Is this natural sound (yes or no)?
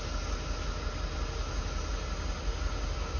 yes